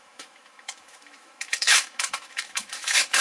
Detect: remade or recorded remade